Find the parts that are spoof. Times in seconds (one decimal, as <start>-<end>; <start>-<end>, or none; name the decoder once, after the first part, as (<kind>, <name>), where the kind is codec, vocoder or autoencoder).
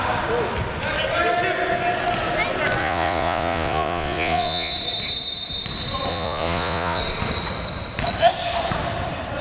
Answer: 2.8-4.7 (vocoder, Vocos); 6.1-7.0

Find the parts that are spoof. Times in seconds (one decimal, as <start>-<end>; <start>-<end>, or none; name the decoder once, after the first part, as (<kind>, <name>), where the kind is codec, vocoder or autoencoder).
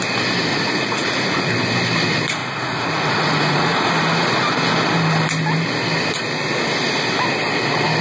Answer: 0.5-1.5 (vocoder, Vocos); 2.4-3.9